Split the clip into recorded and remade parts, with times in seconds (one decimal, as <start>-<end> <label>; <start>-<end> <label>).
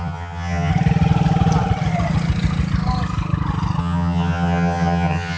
0.0-0.7 remade; 0.7-3.8 recorded; 3.8-5.4 remade